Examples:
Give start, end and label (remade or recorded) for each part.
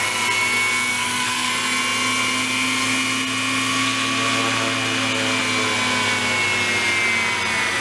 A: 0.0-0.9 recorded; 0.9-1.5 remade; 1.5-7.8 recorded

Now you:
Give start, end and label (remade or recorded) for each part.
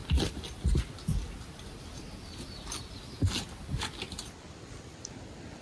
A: 0.0-5.6 recorded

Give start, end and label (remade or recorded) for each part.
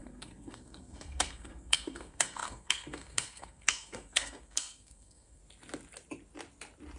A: 0.0-5.4 remade; 5.4-7.0 recorded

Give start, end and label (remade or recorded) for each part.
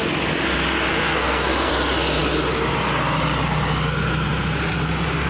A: 0.0-0.9 recorded; 0.9-1.7 remade; 1.7-5.3 recorded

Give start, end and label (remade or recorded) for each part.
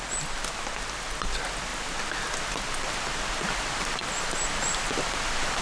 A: 0.0-5.6 recorded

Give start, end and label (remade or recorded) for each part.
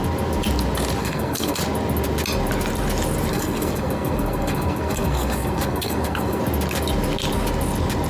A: 0.0-1.0 recorded; 1.0-1.6 remade; 1.6-3.3 recorded; 3.3-6.4 remade; 6.4-8.1 recorded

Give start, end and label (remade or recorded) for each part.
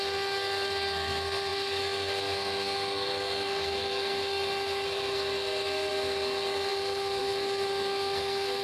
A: 0.0-8.6 remade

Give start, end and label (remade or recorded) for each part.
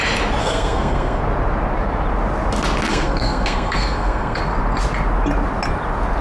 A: 0.0-0.4 recorded; 0.4-1.2 remade; 1.2-2.9 recorded; 2.9-4.4 remade; 4.4-6.2 recorded